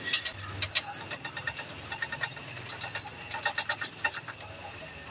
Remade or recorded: recorded